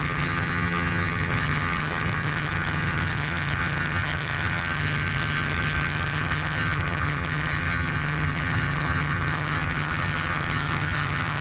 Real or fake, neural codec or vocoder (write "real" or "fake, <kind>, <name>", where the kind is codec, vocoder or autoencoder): fake, vocoder, HiFi-GAN